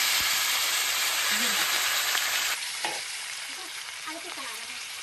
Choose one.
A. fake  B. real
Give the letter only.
A